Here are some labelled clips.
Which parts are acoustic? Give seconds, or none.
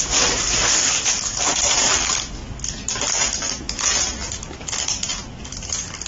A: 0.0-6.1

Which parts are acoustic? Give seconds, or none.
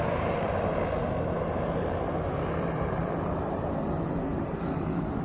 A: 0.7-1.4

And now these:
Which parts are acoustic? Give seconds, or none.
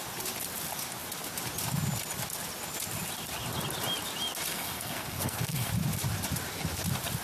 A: 0.0-4.5; 5.7-7.2